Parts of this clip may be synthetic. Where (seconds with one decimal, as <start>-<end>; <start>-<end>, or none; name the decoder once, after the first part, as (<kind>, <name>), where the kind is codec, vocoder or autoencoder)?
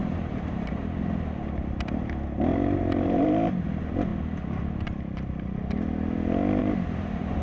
0.0-0.8 (vocoder, BigVGAN v2); 2.5-3.6; 6.6-7.4